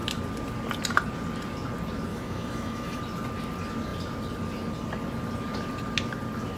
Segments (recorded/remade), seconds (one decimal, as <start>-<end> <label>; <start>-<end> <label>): 0.0-2.1 recorded; 2.1-3.0 remade; 3.0-6.6 recorded